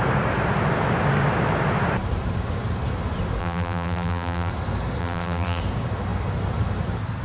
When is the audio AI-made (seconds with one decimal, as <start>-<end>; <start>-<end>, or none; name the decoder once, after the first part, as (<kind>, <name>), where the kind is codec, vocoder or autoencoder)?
3.4-4.5 (vocoder, BigVGAN v2); 5.0-5.6